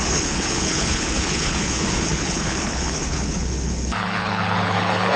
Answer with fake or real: fake